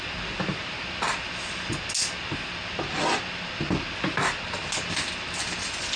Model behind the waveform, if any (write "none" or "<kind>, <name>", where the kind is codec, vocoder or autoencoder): none